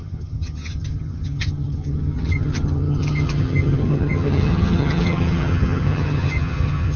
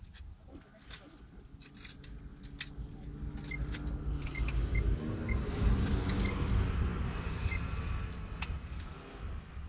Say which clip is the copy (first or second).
first